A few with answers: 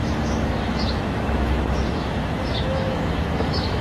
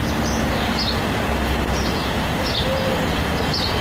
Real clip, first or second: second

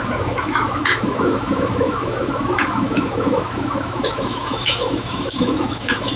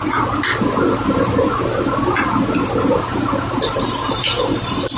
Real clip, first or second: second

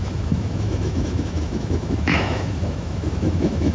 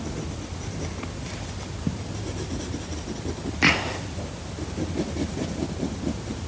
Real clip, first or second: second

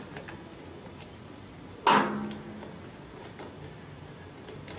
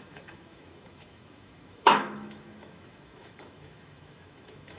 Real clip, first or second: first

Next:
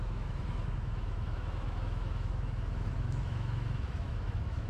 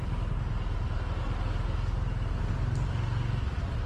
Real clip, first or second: second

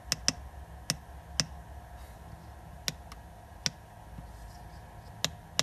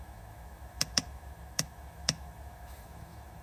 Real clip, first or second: first